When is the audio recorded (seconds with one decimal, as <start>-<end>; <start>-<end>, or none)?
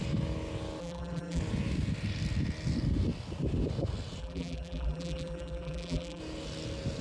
0.0-0.8; 1.4-4.2; 6.2-7.0